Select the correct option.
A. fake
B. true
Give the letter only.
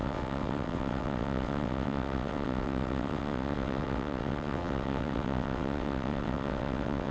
A